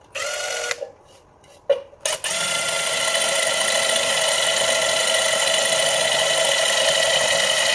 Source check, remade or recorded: recorded